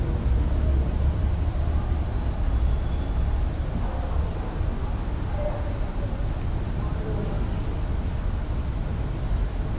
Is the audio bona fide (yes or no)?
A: yes